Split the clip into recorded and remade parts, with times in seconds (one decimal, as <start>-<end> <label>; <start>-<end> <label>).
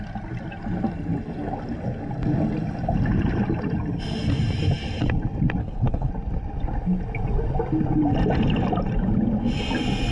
0.0-5.6 recorded; 5.6-6.1 remade; 6.1-10.1 recorded